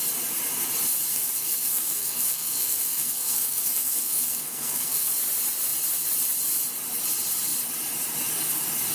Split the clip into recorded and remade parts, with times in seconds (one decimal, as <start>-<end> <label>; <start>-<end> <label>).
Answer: 0.0-1.1 recorded; 1.1-5.1 remade; 5.1-8.9 recorded